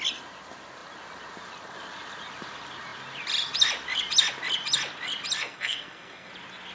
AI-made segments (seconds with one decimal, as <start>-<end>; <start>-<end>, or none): 5.4-6.3